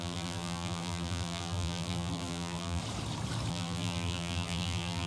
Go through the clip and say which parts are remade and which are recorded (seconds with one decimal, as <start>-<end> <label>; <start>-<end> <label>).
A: 0.0-2.8 remade; 2.8-3.5 recorded; 3.5-5.1 remade